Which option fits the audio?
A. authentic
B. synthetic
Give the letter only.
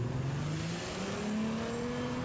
A